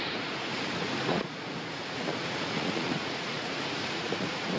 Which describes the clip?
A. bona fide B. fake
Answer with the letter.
B